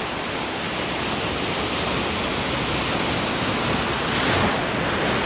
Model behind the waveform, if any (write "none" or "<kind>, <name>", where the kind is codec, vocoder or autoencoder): none